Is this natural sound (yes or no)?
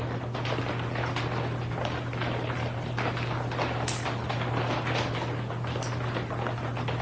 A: yes